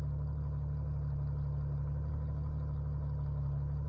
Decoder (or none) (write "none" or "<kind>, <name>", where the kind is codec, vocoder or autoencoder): none